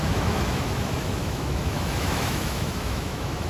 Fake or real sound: fake